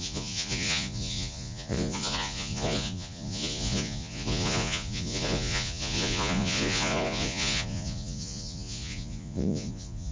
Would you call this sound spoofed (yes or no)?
yes